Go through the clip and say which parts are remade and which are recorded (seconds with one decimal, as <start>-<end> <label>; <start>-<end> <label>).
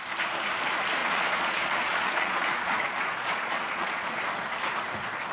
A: 0.0-1.0 recorded; 1.0-4.2 remade; 4.2-5.3 recorded